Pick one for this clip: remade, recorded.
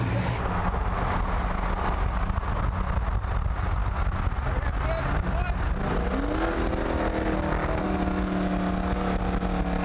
recorded